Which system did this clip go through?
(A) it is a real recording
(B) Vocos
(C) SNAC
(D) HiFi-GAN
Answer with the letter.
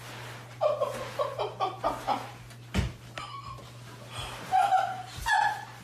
A